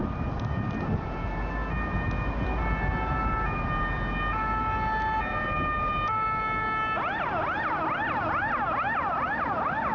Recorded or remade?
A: recorded